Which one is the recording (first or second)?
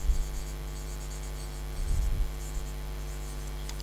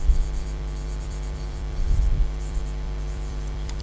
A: first